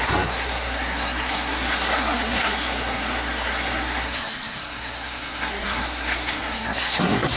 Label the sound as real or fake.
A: fake